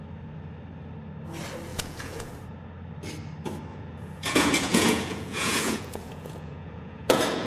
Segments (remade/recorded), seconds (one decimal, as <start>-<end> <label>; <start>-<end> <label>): 0.0-1.7 recorded; 1.7-2.3 remade; 2.3-3.7 recorded; 3.7-7.5 remade